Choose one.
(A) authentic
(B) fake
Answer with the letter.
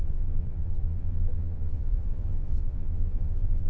B